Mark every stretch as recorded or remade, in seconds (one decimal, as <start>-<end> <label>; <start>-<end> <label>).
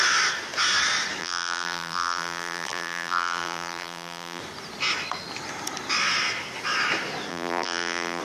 0.0-1.2 recorded; 1.2-4.4 remade; 4.4-7.3 recorded; 7.3-8.2 remade